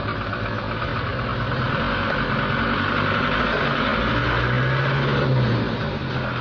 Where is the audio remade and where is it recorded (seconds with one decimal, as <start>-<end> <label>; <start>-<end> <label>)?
0.0-6.4 recorded